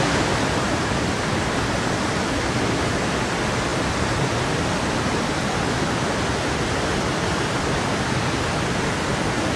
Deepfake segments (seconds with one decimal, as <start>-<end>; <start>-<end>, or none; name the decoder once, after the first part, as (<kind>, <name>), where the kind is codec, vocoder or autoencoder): none